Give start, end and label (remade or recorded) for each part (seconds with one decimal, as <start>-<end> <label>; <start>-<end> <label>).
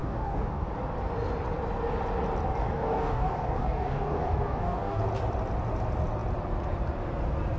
0.0-0.7 remade; 0.7-2.6 recorded; 2.6-5.0 remade; 5.0-7.6 recorded